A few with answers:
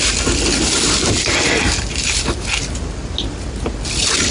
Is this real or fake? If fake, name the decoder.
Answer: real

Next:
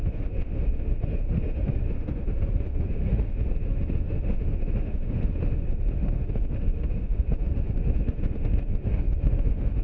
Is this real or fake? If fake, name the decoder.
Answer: fake, autoencoder, DAC-VAE